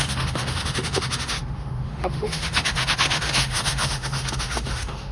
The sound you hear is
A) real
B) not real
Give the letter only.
B